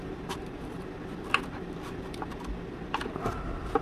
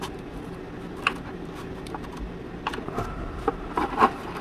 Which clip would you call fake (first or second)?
first